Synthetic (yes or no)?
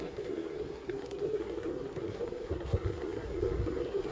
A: yes